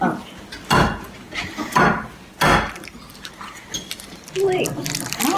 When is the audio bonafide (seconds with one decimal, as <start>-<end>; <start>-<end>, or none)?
0.0-5.4